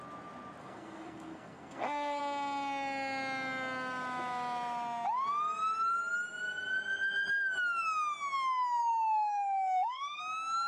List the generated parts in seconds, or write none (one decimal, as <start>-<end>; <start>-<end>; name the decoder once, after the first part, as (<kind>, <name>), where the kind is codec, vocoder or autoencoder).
0.6-2.2 (codec, SNAC); 8.8-10.2